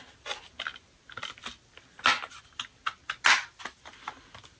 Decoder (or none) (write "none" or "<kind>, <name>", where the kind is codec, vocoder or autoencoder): none